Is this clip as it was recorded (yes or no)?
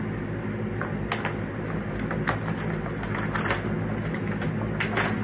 yes